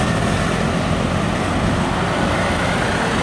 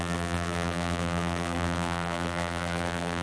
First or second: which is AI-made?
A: second